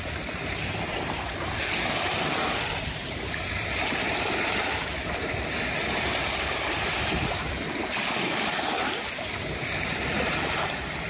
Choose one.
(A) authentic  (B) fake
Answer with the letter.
B